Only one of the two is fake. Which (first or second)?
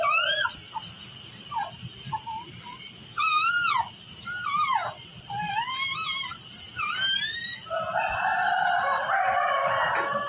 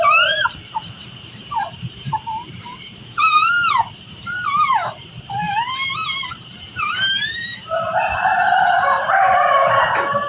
second